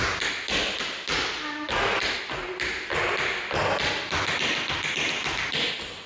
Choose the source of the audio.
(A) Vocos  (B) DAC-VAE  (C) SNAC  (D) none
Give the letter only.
D